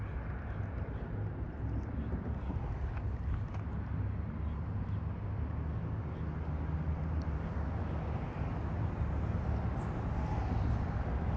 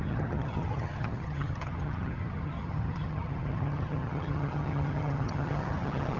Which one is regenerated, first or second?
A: second